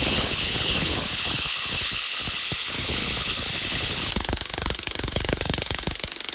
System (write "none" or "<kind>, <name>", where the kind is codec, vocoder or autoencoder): codec, HILCodec